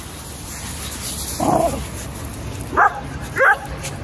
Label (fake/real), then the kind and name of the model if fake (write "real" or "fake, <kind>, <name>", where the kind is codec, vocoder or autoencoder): real